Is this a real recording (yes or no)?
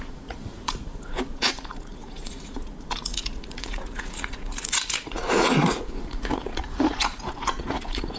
no